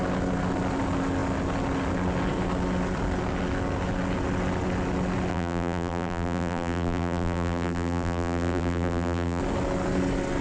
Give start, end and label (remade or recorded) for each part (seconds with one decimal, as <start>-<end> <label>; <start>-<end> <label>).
0.0-5.3 recorded; 5.3-9.4 remade; 9.4-10.4 recorded